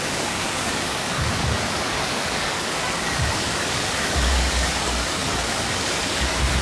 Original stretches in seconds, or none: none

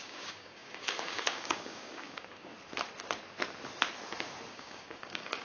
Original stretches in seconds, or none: 2.5-4.5

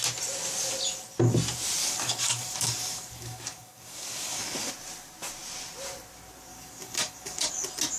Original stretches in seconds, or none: 0.0-1.8; 4.7-6.5; 7.5-8.0

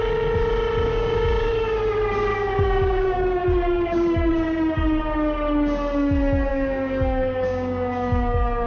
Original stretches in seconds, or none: 0.0-0.9; 1.5-2.3; 4.3-6.5

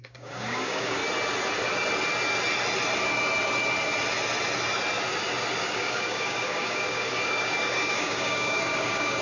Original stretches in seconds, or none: 1.0-5.6